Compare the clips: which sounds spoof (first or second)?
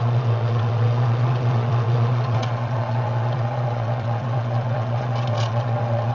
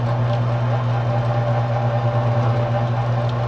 first